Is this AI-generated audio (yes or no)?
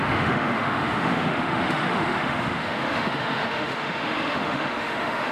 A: yes